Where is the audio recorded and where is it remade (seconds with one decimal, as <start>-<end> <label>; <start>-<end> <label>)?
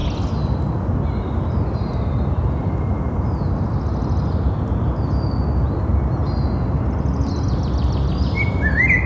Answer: 0.0-6.2 recorded; 6.2-8.7 remade; 8.7-9.1 recorded